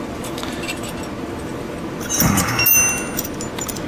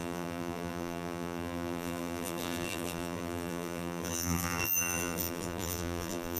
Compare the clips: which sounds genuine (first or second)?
first